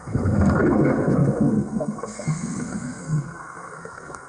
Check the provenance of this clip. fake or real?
fake